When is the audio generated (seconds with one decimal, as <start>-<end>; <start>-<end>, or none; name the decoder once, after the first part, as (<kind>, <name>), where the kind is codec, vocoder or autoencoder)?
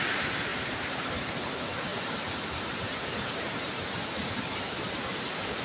0.5-1.1 (vocoder, BigVGAN v2); 1.9-5.6